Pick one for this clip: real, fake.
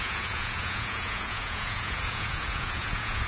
fake